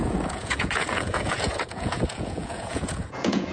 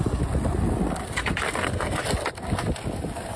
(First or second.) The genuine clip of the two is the second